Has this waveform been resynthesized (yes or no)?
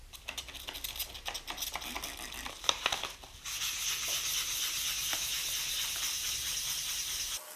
no